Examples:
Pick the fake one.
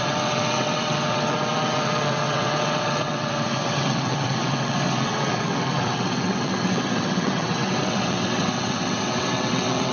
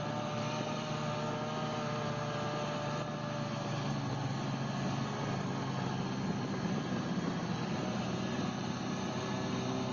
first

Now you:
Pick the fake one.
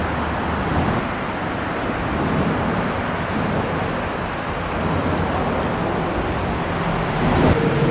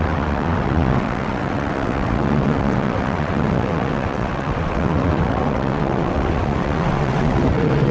second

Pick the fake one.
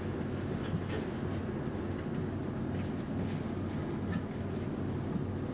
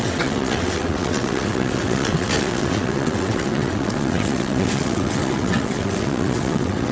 second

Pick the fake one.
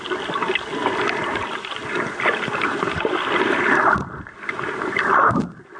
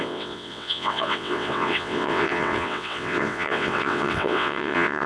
second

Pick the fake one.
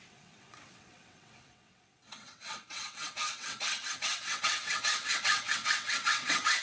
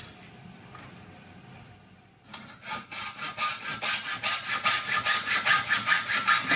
first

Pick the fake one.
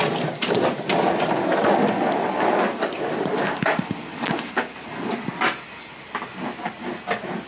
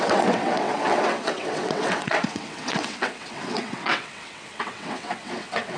second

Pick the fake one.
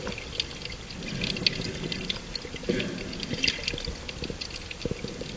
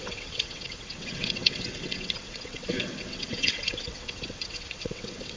second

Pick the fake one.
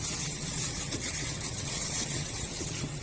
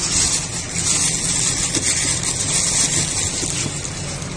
first